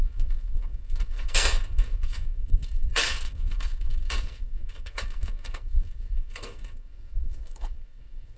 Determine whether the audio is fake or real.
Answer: fake